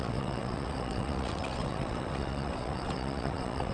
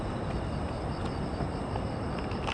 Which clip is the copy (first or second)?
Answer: first